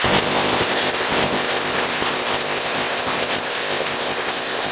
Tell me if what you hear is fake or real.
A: fake